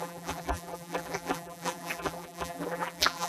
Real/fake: fake